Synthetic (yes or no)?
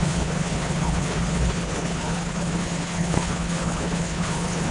yes